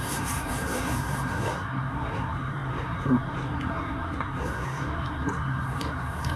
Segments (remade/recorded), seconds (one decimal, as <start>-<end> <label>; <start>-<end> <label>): 0.0-6.4 remade